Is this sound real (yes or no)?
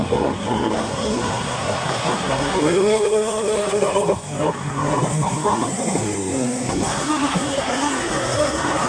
no